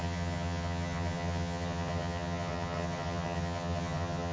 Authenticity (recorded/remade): remade